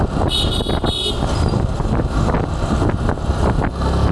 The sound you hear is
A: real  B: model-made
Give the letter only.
A